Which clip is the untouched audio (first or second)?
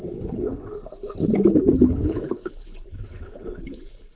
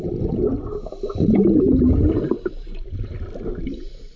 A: second